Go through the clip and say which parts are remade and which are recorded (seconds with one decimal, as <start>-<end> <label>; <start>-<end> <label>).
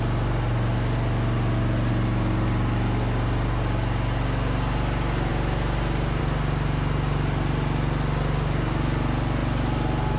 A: 0.0-10.2 recorded